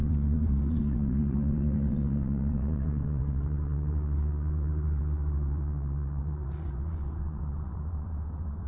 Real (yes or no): no